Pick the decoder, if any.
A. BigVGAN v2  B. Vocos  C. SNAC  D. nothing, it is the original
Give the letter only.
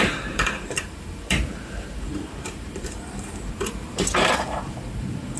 A